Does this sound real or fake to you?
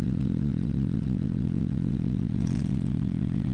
fake